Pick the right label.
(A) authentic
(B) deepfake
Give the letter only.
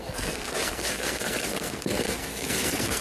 B